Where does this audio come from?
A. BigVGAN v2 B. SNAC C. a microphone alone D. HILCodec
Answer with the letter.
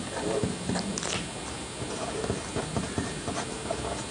C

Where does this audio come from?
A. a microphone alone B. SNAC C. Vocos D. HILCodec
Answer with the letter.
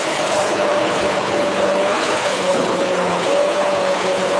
D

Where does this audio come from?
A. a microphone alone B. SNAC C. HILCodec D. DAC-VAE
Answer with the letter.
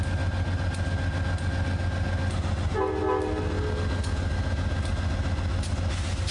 A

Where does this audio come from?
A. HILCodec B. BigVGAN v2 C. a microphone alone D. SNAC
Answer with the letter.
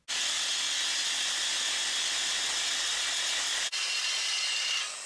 C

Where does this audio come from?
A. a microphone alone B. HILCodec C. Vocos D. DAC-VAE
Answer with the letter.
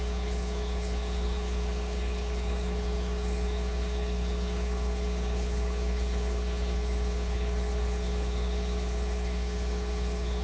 B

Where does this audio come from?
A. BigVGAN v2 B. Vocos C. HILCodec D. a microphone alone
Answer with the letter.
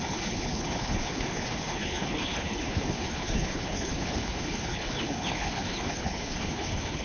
C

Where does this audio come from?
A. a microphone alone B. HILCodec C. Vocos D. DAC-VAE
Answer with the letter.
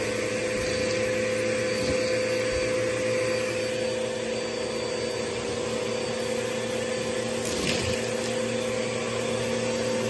A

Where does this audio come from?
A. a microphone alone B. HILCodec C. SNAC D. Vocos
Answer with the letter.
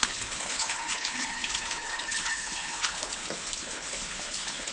B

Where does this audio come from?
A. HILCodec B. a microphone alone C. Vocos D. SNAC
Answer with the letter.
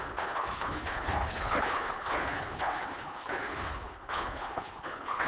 A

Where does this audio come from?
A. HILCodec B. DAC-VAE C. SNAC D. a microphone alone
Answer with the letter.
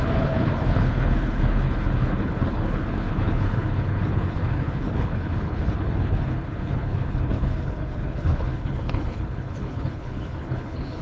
A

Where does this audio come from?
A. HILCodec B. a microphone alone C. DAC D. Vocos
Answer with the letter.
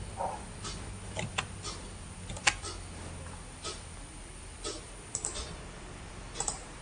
B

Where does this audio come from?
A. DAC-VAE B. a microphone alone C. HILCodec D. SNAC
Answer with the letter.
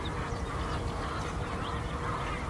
B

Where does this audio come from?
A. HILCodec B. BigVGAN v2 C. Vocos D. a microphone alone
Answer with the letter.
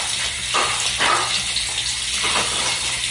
D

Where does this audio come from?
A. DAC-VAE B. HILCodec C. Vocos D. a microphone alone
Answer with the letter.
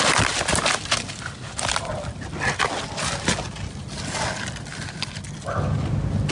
D